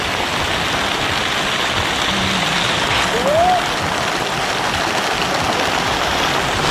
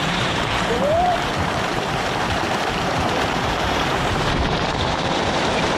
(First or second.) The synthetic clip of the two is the second